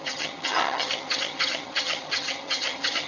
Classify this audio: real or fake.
fake